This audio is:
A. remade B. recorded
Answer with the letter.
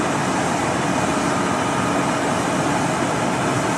B